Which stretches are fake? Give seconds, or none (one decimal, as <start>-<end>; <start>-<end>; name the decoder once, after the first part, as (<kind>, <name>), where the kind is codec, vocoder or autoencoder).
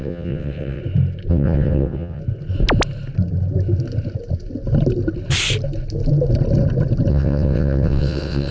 0.0-0.8 (vocoder, WaveNeXt); 1.3-2.2; 7.1-8.5